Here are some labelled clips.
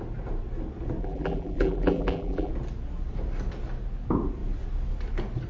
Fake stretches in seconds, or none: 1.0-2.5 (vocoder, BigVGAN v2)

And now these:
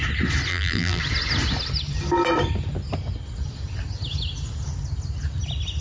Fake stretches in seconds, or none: 0.5-1.0 (vocoder, BigVGAN v2)

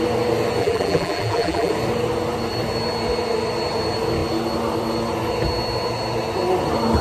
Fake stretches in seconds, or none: 0.6-1.7 (vocoder, BigVGAN v2)

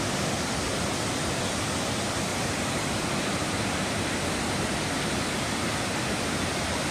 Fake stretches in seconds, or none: 2.3-3.1 (vocoder, BigVGAN v2)

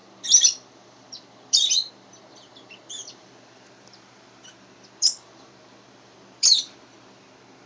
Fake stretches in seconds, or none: 0.0-7.7 (vocoder, BigVGAN v2)

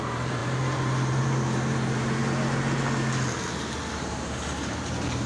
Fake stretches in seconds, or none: 0.0-2.2 (vocoder, BigVGAN v2); 3.9-5.3

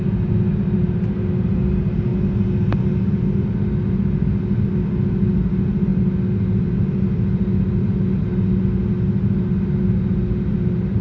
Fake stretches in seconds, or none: none